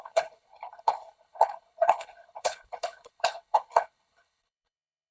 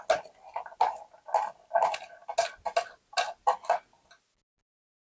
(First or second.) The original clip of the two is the second